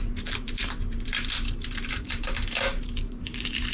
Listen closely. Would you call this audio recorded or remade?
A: remade